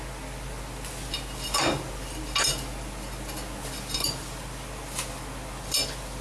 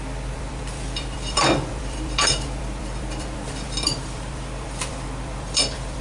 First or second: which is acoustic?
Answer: first